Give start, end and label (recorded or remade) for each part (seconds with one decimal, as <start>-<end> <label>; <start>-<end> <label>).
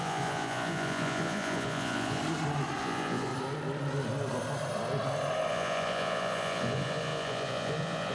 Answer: 0.0-2.2 remade; 2.2-2.8 recorded; 2.8-3.3 remade; 3.3-5.5 recorded; 5.5-8.1 remade